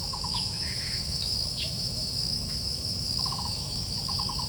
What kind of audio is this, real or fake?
fake